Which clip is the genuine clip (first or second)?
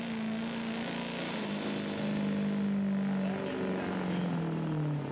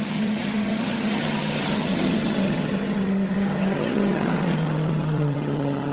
first